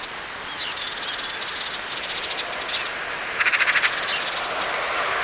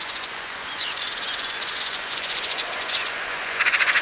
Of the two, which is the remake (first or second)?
second